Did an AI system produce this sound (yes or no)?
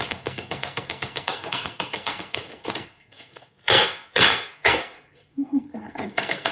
yes